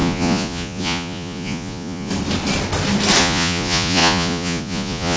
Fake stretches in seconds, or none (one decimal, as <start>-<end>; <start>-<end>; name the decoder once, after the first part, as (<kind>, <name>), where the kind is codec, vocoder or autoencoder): 0.0-2.1 (vocoder, Vocos); 3.2-5.2